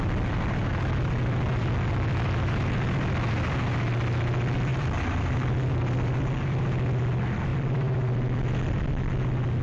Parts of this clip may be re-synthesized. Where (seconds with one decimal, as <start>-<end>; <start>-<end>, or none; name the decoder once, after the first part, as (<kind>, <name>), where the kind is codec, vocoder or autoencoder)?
0.7-1.6 (vocoder, BigVGAN v2); 4.7-5.7